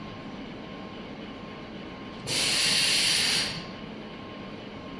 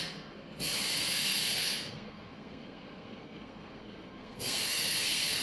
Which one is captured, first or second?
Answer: first